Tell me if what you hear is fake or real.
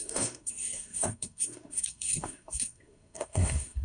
fake